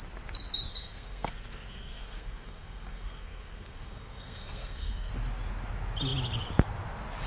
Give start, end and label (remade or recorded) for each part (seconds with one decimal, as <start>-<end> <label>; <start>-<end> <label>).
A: 0.0-0.7 recorded; 0.7-5.1 remade; 5.1-7.3 recorded